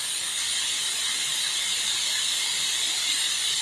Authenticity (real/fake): real